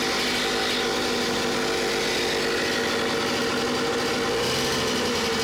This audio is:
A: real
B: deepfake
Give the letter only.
A